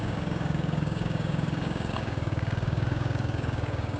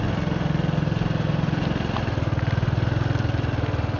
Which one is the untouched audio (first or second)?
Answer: second